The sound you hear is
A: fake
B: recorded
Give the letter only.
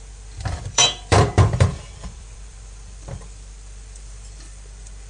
A